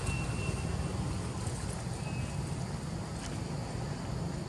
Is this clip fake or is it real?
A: real